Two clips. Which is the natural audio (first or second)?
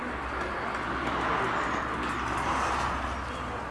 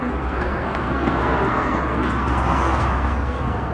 first